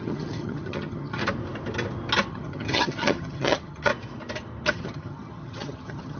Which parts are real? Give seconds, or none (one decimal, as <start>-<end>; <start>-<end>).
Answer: 1.2-2.3; 3.9-4.7

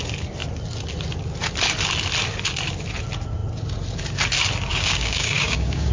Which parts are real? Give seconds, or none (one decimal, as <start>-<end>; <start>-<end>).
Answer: 0.0-4.7

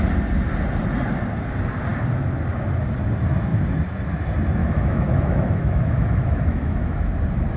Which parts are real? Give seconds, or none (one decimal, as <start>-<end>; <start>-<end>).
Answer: 0.0-4.6; 7.0-7.6

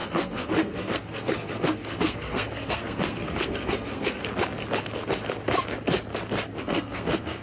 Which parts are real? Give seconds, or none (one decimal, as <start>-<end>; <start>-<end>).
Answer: 4.2-6.6

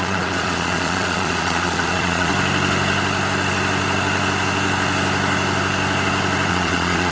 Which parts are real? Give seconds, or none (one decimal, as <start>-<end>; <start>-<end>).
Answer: 2.3-6.5

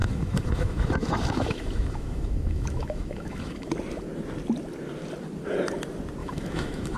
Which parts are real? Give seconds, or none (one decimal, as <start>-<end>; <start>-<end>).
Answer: 3.7-6.2